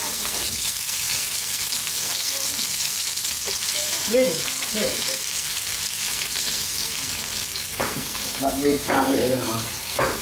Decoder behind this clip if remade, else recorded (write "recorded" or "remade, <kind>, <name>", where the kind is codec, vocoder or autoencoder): remade, codec, SNAC